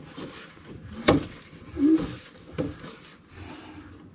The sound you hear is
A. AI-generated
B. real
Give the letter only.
B